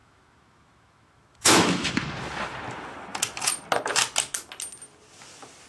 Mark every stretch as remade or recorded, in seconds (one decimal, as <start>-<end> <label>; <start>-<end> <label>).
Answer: 0.0-1.9 remade; 1.9-5.7 recorded